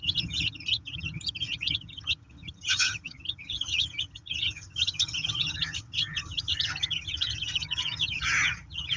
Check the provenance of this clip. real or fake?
fake